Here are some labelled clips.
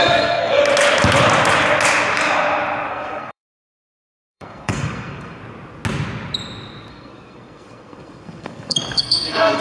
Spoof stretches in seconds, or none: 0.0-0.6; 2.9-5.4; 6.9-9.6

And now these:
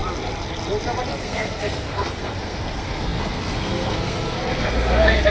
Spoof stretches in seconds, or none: 1.2-5.3

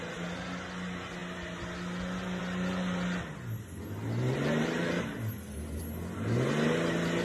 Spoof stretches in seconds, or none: none